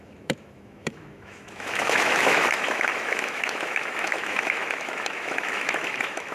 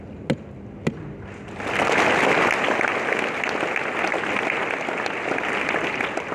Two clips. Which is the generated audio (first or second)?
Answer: first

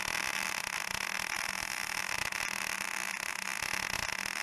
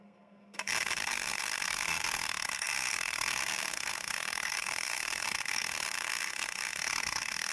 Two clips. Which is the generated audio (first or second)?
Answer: second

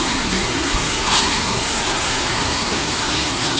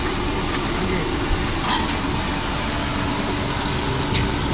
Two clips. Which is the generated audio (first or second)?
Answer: first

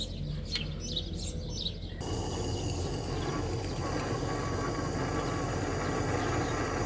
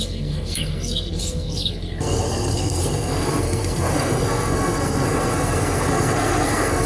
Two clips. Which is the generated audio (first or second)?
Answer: second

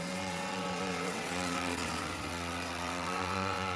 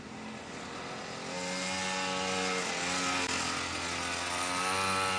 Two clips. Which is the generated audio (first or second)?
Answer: first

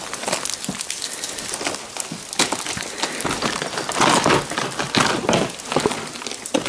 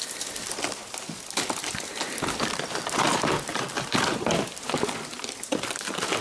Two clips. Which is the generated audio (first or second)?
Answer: second